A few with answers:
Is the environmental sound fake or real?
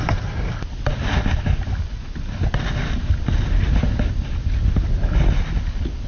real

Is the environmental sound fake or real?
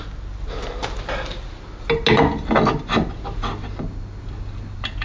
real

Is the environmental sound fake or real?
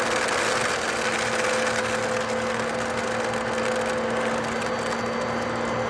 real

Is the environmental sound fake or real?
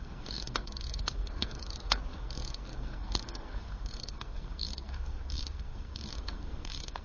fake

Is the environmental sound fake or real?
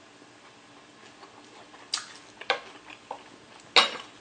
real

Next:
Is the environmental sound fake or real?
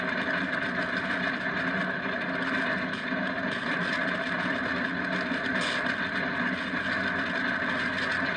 real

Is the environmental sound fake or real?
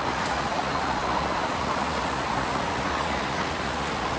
fake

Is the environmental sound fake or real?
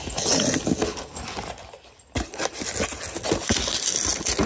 real